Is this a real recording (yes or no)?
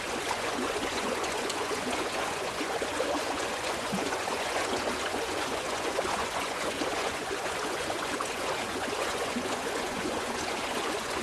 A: no